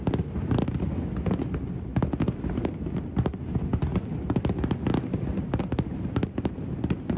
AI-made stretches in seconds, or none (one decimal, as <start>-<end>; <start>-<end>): none